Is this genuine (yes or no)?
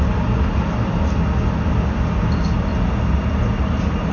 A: yes